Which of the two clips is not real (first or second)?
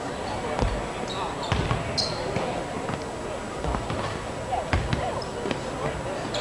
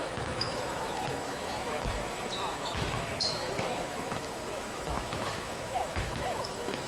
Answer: second